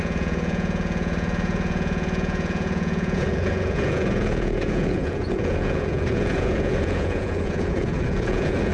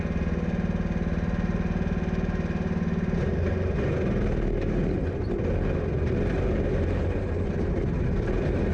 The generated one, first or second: first